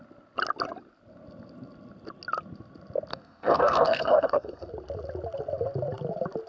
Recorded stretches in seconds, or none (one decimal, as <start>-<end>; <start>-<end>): 0.0-3.1; 4.7-6.5